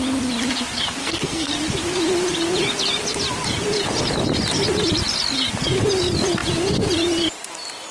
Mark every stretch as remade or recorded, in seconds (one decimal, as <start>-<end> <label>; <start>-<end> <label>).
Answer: 0.0-1.0 recorded; 1.0-1.5 remade; 1.5-7.9 recorded